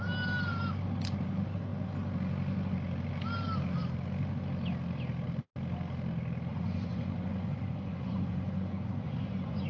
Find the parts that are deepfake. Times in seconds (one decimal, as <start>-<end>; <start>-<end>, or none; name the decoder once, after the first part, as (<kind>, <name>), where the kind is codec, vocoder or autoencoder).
6.5-9.7 (vocoder, Vocos)